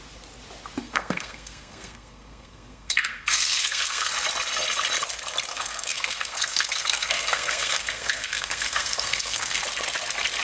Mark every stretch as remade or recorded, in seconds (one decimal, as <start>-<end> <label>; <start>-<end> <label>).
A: 0.0-0.8 recorded; 0.8-4.1 remade; 4.1-5.5 recorded; 5.5-9.6 remade; 9.6-10.4 recorded